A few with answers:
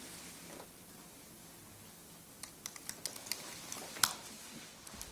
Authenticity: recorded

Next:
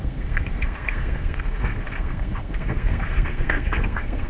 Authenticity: remade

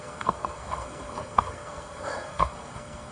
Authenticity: remade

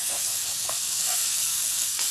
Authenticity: remade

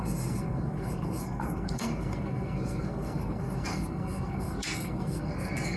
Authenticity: remade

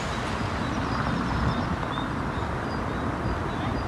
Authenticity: recorded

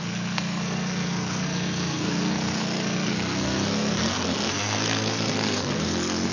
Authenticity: remade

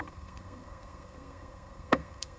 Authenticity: remade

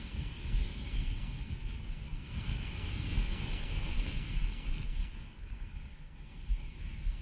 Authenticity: remade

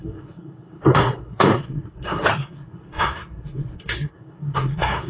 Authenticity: remade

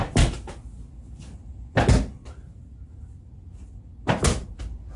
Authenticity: recorded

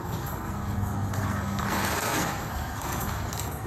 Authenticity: remade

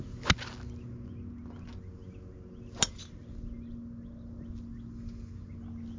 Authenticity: recorded